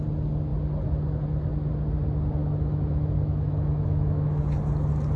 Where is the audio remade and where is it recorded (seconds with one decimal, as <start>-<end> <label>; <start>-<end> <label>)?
0.0-2.4 recorded; 2.4-4.4 remade; 4.4-5.2 recorded